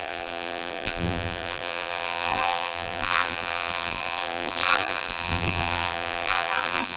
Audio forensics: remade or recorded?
remade